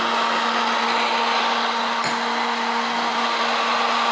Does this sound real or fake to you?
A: real